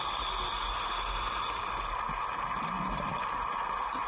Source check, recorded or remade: recorded